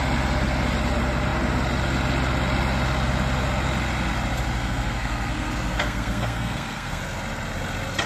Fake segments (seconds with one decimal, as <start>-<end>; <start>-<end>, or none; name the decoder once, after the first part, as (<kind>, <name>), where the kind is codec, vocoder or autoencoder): 4.6-7.0 (codec, SNAC)